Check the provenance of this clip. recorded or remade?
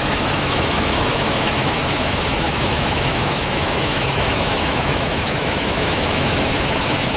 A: remade